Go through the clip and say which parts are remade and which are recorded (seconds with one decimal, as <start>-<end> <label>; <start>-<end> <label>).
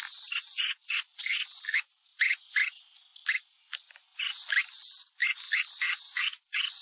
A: 0.0-6.8 recorded